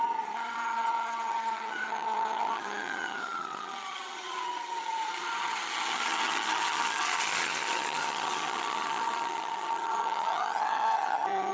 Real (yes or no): no